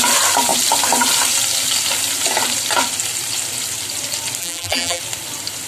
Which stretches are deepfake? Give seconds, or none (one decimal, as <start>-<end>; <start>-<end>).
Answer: 4.4-5.0